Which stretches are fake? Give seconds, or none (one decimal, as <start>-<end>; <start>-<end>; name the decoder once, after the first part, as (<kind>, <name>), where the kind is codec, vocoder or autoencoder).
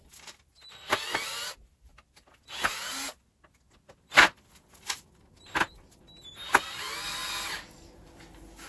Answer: none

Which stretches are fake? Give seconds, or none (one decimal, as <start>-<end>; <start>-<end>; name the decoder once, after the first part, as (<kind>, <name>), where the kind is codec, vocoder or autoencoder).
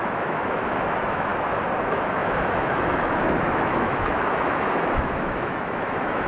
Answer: 0.0-1.3 (autoencoder, DAC-VAE); 1.8-6.3